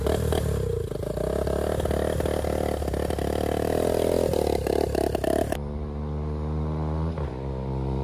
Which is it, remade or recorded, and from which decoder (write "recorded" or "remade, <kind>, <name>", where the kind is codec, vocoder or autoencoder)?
recorded